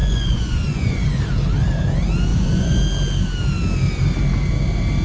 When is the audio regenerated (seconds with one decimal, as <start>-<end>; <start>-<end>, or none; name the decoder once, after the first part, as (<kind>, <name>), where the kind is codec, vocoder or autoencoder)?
0.0-1.2 (vocoder, Vocos); 2.3-2.8